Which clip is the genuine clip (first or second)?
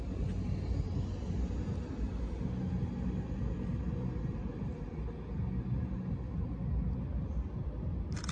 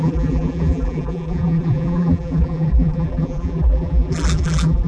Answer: first